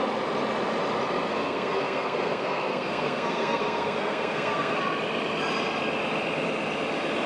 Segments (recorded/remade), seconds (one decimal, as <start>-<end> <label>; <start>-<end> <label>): 0.0-1.3 recorded; 1.3-4.8 remade; 4.8-7.3 recorded